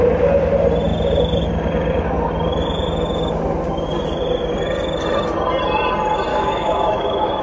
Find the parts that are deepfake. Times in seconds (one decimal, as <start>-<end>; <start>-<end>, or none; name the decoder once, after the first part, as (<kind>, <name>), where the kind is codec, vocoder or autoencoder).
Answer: 6.3-7.4 (codec, DAC)